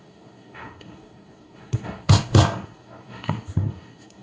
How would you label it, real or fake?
fake